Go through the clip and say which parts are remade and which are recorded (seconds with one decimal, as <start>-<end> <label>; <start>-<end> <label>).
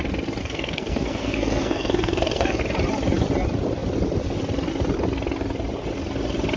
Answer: 0.0-0.4 recorded; 0.4-2.6 remade; 2.6-6.6 recorded